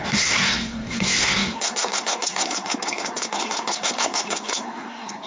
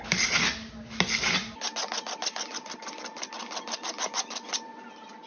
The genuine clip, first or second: second